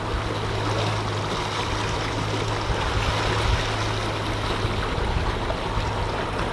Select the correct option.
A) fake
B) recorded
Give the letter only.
B